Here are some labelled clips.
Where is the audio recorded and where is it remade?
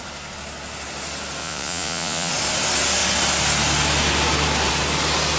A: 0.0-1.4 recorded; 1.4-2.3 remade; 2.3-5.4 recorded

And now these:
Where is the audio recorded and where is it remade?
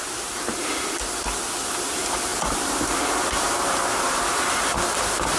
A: 0.0-0.9 remade; 0.9-2.3 recorded; 2.3-3.5 remade; 3.5-5.4 recorded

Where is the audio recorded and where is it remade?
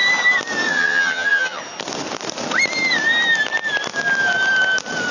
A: 0.0-0.7 recorded; 0.7-1.6 remade; 1.6-5.1 recorded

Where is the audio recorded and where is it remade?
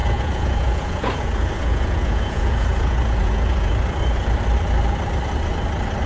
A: 0.0-3.7 remade; 3.7-6.1 recorded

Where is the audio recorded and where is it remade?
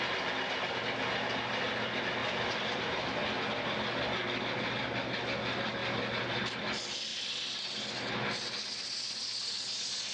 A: 0.0-2.2 recorded; 2.2-3.2 remade; 3.2-7.1 recorded; 7.1-7.6 remade; 7.6-10.1 recorded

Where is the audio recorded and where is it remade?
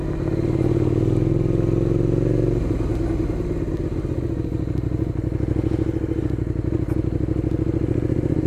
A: 0.0-8.5 recorded